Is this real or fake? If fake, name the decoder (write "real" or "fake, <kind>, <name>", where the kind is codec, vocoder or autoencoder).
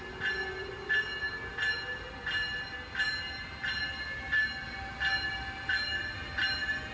real